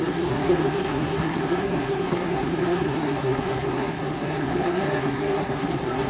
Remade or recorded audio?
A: remade